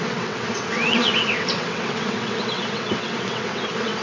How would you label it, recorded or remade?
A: remade